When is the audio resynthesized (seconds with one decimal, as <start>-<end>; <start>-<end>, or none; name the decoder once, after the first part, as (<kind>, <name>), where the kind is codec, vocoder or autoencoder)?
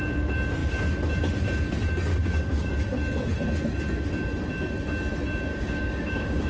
2.1-2.7 (codec, DAC); 5.5-6.5